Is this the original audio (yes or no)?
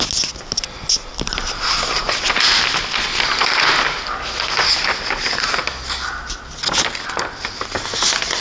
yes